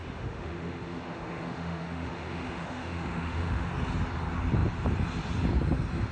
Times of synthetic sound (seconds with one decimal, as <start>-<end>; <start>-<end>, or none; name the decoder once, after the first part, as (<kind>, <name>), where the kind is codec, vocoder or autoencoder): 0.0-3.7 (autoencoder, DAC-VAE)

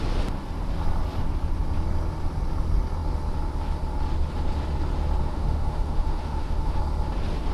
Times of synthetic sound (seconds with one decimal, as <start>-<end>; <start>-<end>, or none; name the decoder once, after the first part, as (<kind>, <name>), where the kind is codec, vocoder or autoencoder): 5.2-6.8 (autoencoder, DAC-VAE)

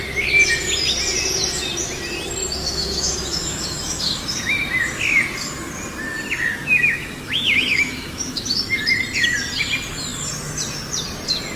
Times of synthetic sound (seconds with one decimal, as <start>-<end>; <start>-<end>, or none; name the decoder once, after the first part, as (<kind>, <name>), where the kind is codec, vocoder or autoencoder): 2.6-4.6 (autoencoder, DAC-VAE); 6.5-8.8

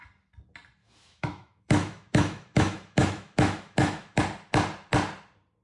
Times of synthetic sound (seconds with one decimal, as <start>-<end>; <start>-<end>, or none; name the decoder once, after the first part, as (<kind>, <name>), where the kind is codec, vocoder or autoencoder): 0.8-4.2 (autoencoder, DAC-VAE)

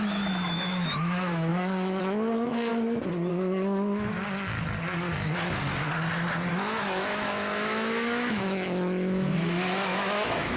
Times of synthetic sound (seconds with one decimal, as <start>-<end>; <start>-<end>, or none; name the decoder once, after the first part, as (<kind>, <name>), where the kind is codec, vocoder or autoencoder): 0.0-2.7 (autoencoder, DAC-VAE); 3.3-4.1; 6.5-10.6

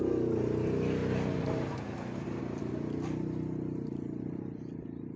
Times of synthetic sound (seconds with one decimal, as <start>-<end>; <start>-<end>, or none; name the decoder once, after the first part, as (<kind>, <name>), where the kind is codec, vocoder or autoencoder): none

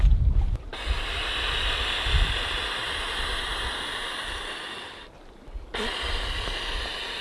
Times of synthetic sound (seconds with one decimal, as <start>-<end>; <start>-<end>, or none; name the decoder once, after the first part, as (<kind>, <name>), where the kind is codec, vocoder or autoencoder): none

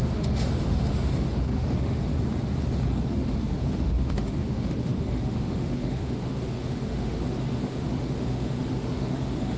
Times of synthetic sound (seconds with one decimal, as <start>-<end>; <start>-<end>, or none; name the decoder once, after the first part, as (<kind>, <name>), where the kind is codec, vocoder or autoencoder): 0.0-2.1 (autoencoder, DAC-VAE); 3.1-9.6